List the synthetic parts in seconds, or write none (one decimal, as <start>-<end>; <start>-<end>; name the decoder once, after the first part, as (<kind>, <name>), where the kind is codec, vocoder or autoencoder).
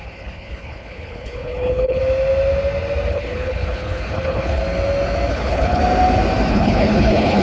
0.0-2.0 (codec, HILCodec); 3.1-4.6; 5.3-5.8; 6.5-7.4